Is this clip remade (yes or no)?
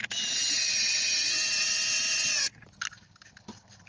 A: no